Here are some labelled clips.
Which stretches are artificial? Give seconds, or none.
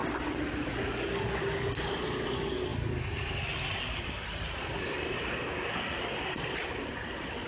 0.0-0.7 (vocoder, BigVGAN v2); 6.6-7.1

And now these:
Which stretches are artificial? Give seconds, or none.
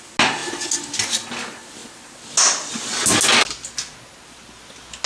none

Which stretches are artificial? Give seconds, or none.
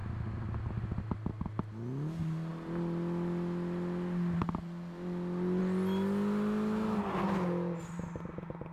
none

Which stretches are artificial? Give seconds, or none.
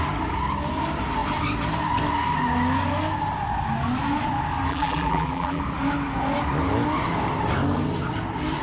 4.7-5.6 (vocoder, BigVGAN v2)